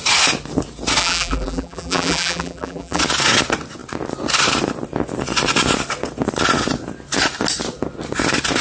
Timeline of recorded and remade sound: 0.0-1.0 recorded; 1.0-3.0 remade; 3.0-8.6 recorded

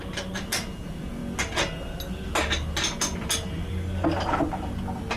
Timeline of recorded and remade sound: 0.0-5.2 recorded

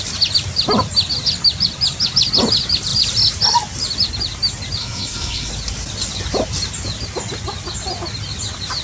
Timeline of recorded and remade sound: 0.0-4.8 recorded; 4.8-5.5 remade; 5.5-8.8 recorded

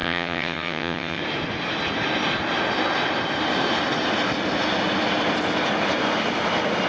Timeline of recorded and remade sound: 0.0-1.2 remade; 1.2-6.9 recorded

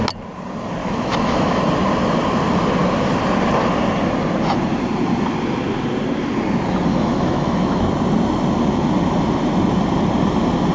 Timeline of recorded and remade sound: 0.0-0.8 recorded; 0.8-1.6 remade; 1.6-6.9 recorded; 6.9-7.8 remade; 7.8-10.7 recorded

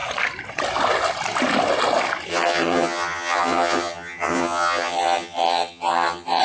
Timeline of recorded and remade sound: 0.0-2.3 recorded; 2.3-6.4 remade

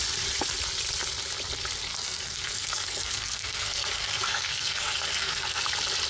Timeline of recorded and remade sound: 0.0-1.9 recorded; 1.9-5.6 remade; 5.6-6.1 recorded

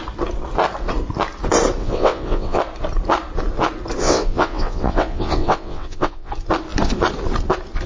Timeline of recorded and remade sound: 0.0-1.8 recorded; 1.8-2.6 remade; 2.6-4.0 recorded; 4.0-6.3 remade; 6.3-7.9 recorded